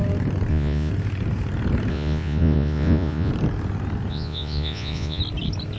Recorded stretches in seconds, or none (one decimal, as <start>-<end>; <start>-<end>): 0.0-0.5; 0.9-1.9; 3.3-4.1; 5.2-5.8